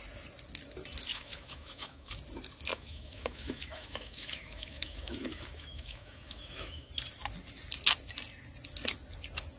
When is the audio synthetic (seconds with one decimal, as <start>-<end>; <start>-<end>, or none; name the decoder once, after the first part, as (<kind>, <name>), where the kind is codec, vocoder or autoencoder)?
1.1-2.1 (autoencoder, DAC-VAE); 2.7-6.9